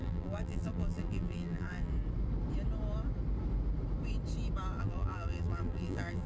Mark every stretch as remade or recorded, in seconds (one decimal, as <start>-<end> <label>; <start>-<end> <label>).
0.0-1.9 remade; 1.9-4.8 recorded; 4.8-6.3 remade